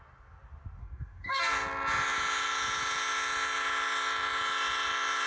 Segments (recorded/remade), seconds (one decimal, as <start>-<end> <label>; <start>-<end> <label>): 0.0-0.8 recorded; 0.8-1.4 remade; 1.4-5.3 recorded